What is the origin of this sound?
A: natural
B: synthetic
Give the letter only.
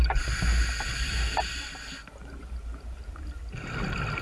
A